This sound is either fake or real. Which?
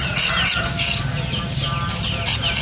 real